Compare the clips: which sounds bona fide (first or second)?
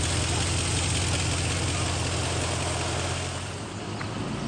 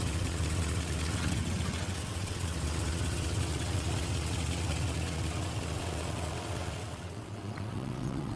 first